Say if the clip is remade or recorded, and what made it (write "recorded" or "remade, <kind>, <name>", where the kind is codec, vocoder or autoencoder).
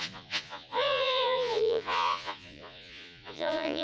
remade, vocoder, Vocos